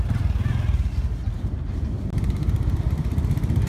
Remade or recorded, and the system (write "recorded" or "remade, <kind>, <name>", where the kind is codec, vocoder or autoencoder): recorded